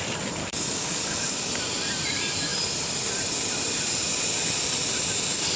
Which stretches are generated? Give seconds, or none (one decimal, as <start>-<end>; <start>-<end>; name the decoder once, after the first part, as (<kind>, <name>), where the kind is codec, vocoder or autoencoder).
0.4-1.5 (codec, DAC)